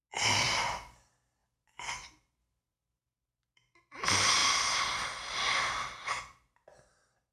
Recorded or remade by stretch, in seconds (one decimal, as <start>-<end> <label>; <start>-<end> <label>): 0.0-1.4 recorded; 1.4-1.9 remade; 1.9-7.3 recorded